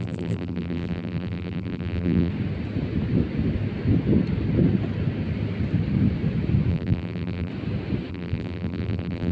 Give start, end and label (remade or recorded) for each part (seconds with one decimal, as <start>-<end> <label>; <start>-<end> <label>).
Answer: 0.0-2.3 remade; 2.3-6.7 recorded; 6.7-7.5 remade; 7.5-8.1 recorded; 8.1-9.3 remade